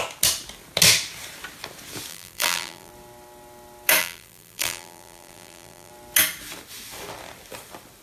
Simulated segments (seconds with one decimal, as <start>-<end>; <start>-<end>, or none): 2.1-2.9; 4.0-5.9